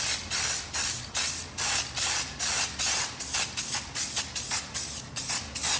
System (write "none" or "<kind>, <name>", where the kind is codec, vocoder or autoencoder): none